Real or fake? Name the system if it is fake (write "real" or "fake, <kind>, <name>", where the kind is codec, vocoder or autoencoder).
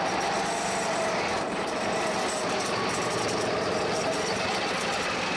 real